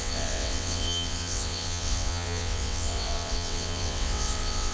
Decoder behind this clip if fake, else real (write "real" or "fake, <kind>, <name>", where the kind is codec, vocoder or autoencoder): fake, vocoder, WaveNeXt